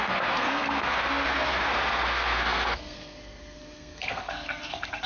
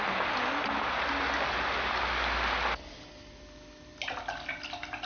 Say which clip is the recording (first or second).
second